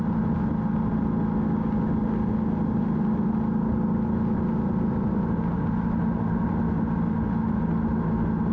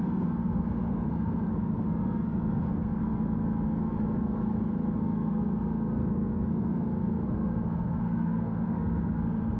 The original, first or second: first